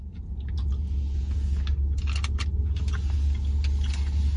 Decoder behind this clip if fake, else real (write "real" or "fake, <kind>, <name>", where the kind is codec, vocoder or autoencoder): real